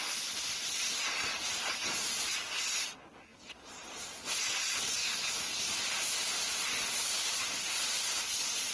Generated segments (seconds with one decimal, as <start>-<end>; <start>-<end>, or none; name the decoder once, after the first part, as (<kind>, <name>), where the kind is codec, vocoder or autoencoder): 5.0-5.5 (autoencoder, DAC-VAE)